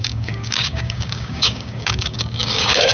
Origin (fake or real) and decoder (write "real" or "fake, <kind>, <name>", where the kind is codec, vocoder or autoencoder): fake, codec, DAC